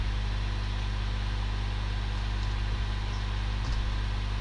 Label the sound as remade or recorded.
recorded